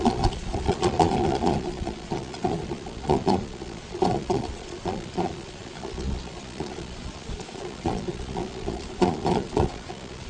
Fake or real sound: fake